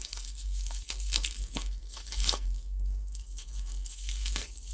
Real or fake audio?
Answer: fake